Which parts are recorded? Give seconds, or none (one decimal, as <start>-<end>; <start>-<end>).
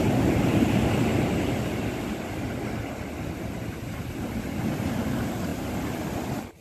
0.0-6.6